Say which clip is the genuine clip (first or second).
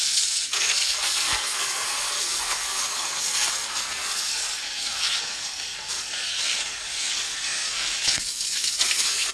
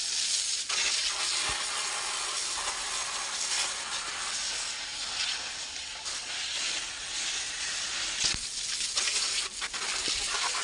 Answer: second